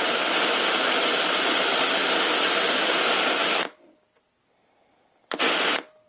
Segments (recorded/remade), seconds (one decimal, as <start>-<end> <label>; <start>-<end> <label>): 0.0-2.0 remade; 2.0-2.7 recorded; 2.7-6.1 remade

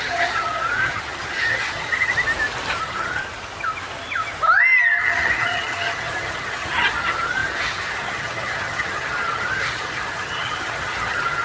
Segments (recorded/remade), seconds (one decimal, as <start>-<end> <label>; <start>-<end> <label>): 0.0-2.1 remade; 2.1-2.8 recorded; 2.8-3.2 remade; 3.2-5.0 recorded; 5.0-11.4 remade

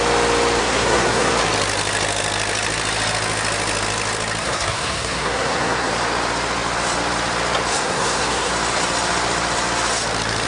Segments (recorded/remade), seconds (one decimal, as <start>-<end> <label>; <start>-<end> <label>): 0.0-0.6 recorded; 0.6-1.3 remade; 1.3-4.4 recorded; 4.4-5.9 remade; 5.9-7.7 recorded; 7.7-8.5 remade; 8.5-10.5 recorded